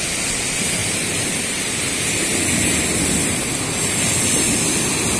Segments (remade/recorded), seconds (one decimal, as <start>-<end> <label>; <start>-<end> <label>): 0.0-0.8 recorded; 0.8-1.4 remade; 1.4-5.2 recorded